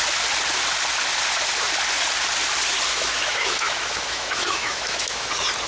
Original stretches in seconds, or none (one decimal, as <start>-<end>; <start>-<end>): 0.0-2.9; 5.3-5.7